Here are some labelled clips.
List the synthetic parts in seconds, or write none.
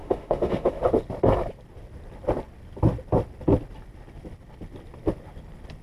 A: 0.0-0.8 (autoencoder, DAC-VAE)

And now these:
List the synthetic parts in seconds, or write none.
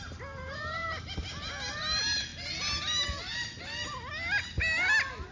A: none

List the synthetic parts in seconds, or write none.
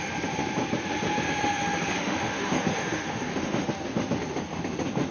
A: 2.0-3.7 (autoencoder, DAC-VAE)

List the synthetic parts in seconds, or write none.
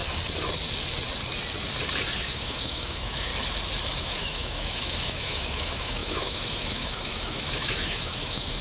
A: 2.2-3.3 (autoencoder, DAC-VAE); 4.0-8.6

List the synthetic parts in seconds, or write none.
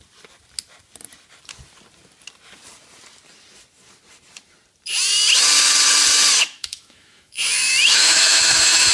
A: 6.4-8.9 (autoencoder, DAC-VAE)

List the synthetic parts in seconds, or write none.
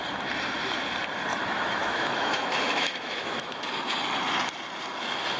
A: 1.3-3.6 (autoencoder, DAC-VAE)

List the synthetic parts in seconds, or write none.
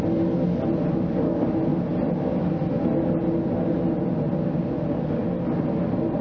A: none